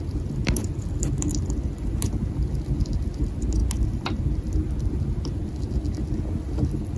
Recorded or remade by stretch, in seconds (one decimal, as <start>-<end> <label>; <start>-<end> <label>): 0.0-7.0 recorded